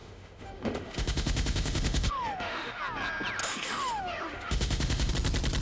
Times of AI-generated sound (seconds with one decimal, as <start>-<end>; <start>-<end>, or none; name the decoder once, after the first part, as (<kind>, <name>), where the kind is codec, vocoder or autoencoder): 0.0-2.8 (autoencoder, DAC-VAE); 3.4-5.1